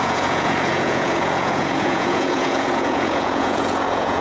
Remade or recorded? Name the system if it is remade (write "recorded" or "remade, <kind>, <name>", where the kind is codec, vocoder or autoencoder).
remade, vocoder, Vocos